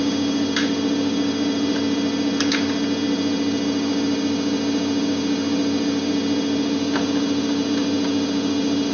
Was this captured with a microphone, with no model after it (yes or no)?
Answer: yes